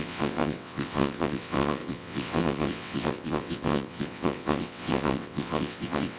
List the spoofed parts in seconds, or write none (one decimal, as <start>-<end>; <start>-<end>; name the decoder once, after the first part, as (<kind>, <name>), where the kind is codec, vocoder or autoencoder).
0.0-6.2 (vocoder, WaveNeXt)